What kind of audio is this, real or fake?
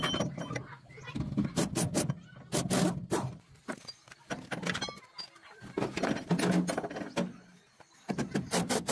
real